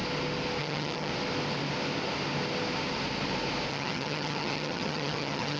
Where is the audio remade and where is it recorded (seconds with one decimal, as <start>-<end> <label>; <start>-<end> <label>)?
0.0-0.6 recorded; 0.6-1.1 remade; 1.1-3.7 recorded; 3.7-5.6 remade